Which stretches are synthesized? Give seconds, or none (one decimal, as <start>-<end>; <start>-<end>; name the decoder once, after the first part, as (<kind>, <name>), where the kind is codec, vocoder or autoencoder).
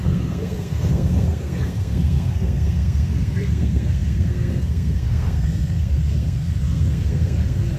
0.0-7.8 (codec, SNAC)